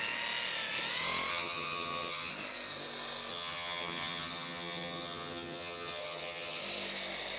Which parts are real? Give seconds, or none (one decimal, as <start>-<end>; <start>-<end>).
0.0-1.3; 2.3-3.3; 6.6-7.4